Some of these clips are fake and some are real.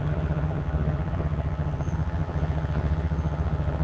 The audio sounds fake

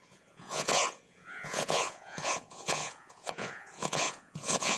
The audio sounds fake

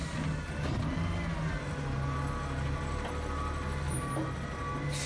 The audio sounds real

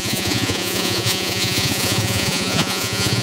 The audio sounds fake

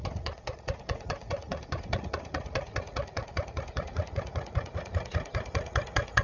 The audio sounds fake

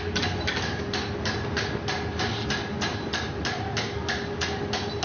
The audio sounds real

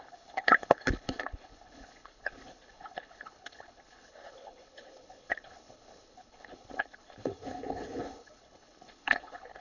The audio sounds fake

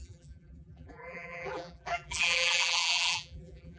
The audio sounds fake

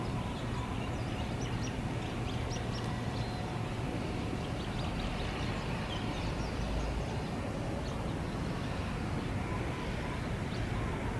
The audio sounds real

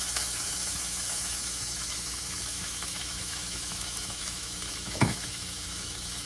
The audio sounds fake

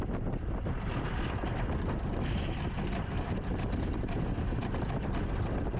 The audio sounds real